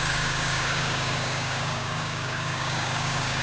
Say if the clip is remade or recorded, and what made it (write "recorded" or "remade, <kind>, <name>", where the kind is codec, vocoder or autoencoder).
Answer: remade, codec, DAC